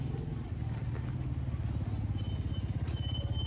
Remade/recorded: recorded